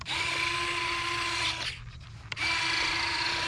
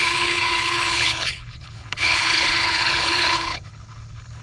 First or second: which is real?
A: first